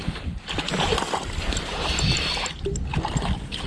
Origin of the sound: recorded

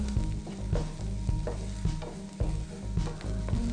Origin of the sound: recorded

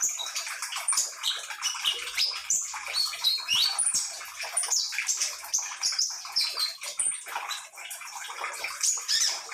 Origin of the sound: remade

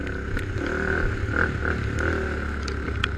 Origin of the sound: recorded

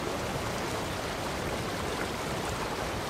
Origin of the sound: remade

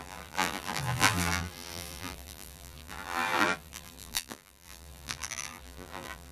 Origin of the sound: remade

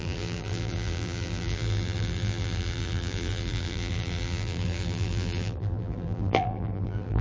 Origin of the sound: remade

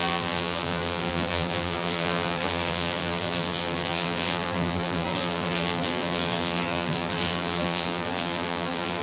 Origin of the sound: remade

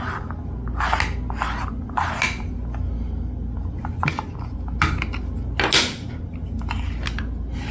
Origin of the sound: recorded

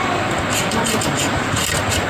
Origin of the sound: recorded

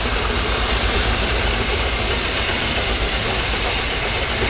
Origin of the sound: recorded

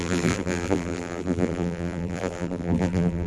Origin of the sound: remade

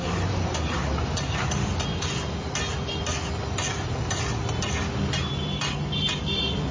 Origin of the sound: recorded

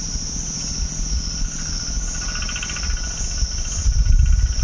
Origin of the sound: recorded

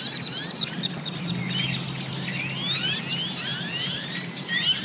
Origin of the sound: recorded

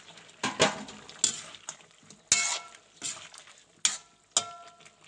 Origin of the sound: recorded